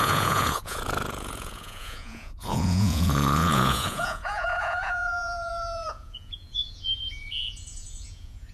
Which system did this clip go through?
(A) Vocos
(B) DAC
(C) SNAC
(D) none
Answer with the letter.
A